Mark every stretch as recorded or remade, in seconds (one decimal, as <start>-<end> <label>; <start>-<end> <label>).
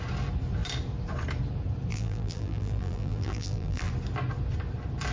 0.0-1.9 recorded; 1.9-3.9 remade; 3.9-5.1 recorded